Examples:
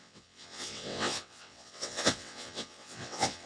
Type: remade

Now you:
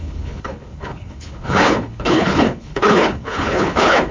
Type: remade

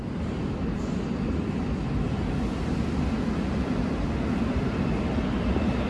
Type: recorded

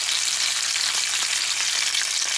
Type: recorded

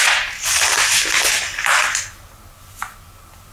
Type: recorded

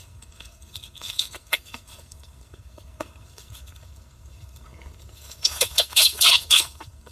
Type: remade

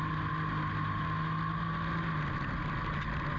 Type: recorded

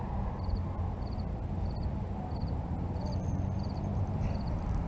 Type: recorded